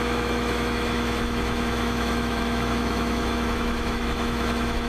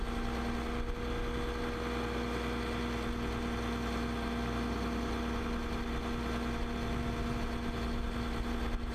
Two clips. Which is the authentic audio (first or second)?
second